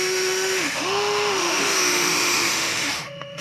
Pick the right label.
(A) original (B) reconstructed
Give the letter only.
B